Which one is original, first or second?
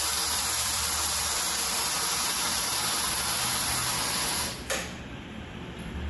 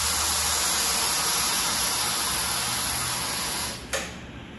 second